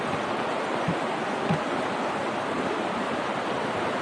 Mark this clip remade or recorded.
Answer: recorded